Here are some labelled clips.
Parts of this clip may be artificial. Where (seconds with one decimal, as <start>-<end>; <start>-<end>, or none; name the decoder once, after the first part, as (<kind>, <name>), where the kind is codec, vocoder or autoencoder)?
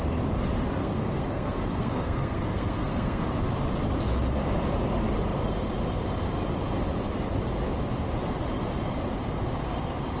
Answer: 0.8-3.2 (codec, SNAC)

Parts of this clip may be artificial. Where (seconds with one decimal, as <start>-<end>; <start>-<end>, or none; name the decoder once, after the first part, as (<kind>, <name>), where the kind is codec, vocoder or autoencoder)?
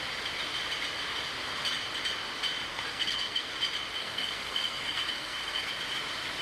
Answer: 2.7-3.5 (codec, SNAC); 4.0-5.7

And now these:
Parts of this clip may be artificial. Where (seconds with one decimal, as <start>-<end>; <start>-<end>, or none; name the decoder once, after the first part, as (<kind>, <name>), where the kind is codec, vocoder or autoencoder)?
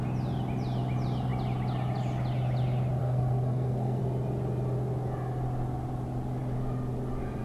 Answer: 3.0-4.0 (codec, SNAC)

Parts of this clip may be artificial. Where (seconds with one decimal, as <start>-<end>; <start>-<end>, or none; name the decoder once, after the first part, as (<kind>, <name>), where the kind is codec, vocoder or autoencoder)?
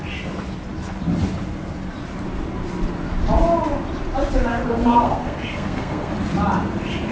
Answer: 4.5-6.1 (codec, SNAC)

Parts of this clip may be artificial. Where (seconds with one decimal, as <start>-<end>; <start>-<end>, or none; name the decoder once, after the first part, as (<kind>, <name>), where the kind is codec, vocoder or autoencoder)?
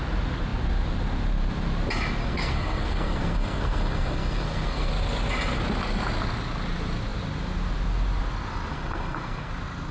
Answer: 2.2-4.9 (codec, SNAC); 8.7-9.5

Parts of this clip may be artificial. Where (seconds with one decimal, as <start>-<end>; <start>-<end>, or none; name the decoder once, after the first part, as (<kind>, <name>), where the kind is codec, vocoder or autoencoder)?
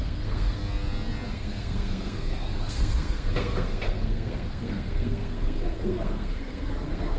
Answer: 0.0-0.6 (codec, SNAC); 1.3-7.2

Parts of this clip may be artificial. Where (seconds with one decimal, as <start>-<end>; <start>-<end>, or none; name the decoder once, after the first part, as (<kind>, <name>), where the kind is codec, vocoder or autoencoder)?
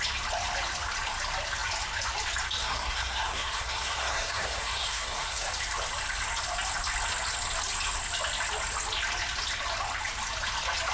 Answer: 2.6-5.5 (codec, SNAC)